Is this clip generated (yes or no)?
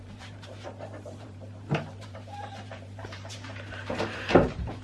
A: yes